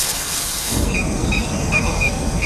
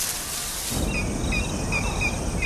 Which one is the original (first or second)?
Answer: second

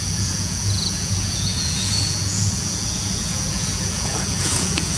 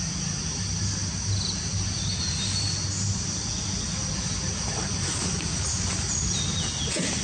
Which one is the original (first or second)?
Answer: second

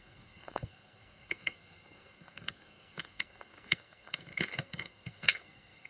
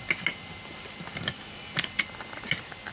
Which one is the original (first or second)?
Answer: second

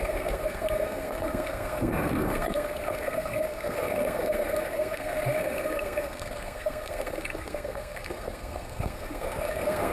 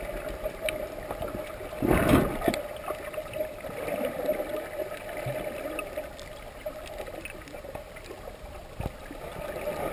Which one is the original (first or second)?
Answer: second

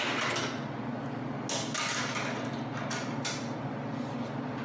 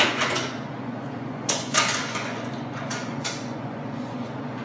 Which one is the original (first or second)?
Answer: first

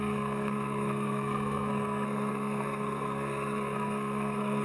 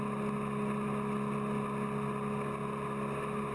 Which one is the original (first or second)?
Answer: second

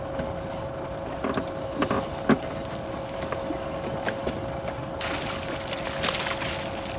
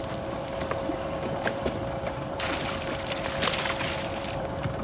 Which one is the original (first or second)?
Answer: first